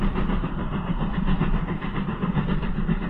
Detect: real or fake fake